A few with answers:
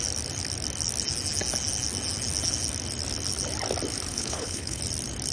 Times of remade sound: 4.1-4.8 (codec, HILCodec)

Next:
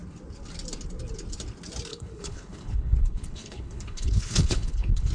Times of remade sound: 1.9-5.1 (codec, HILCodec)

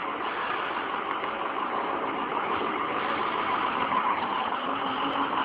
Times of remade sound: 2.3-3.0 (codec, HILCodec); 3.9-4.9